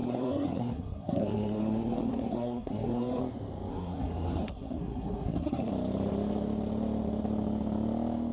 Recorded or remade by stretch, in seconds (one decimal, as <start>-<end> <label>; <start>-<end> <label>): 0.0-3.2 remade; 3.2-3.7 recorded; 3.7-5.7 remade; 5.7-8.3 recorded